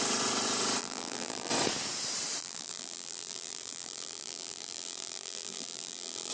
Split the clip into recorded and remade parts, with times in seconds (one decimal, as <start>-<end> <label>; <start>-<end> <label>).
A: 0.0-0.8 recorded; 0.8-1.5 remade; 1.5-2.4 recorded; 2.4-6.3 remade